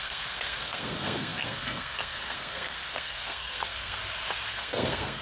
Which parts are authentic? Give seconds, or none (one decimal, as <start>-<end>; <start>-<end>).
4.0-4.5